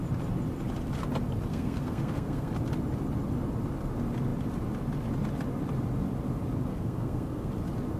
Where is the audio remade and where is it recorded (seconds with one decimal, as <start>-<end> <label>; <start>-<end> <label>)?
0.0-1.5 recorded; 1.5-2.5 remade; 2.5-6.7 recorded; 6.7-7.5 remade; 7.5-8.0 recorded